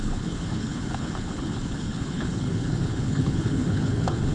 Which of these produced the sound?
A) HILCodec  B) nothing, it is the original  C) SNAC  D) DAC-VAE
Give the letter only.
A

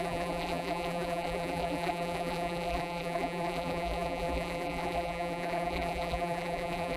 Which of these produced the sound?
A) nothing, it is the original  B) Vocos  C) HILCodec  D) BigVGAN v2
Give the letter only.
D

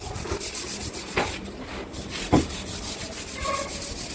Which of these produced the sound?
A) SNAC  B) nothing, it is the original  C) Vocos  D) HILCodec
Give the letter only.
B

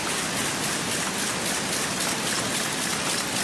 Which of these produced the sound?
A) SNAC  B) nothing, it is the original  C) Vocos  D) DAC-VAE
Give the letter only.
B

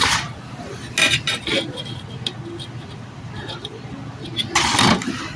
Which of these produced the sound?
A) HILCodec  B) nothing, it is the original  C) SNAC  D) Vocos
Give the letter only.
B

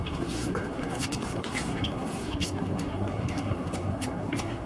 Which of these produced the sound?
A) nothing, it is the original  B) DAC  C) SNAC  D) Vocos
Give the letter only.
C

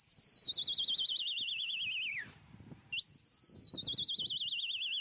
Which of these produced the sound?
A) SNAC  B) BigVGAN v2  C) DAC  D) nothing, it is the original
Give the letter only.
D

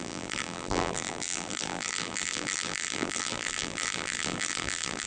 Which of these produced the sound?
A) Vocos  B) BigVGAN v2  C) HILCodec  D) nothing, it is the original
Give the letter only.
B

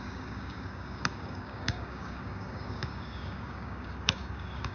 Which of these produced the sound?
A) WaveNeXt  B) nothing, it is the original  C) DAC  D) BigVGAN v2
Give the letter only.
C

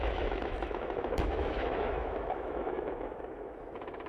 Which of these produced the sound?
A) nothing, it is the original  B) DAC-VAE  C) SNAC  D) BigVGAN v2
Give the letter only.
B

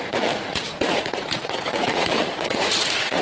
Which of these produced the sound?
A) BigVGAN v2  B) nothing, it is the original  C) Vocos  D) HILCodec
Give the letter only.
C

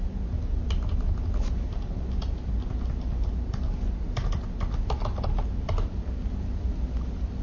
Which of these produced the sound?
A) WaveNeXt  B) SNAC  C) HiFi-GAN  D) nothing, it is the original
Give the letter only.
D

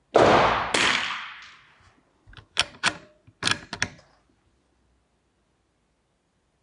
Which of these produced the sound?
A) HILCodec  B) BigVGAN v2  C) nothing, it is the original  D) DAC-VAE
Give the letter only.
C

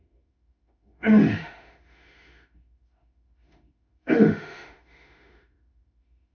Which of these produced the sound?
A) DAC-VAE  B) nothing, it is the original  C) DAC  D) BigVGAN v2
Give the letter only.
A